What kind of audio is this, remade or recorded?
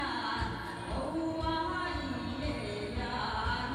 recorded